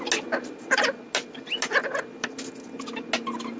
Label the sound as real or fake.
real